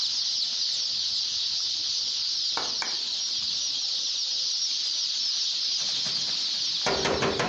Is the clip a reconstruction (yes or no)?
no